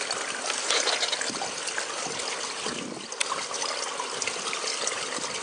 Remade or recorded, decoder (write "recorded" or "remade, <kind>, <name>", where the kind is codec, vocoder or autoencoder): recorded